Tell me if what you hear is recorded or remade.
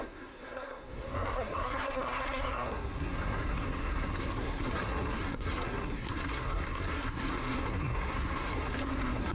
remade